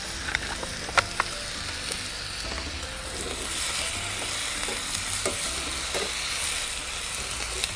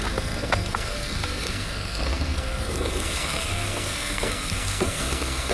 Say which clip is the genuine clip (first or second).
first